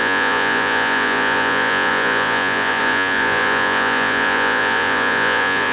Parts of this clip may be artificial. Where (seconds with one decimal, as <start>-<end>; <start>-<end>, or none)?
0.0-5.7